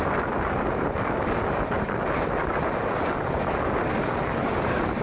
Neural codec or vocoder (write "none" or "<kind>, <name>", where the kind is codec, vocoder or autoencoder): none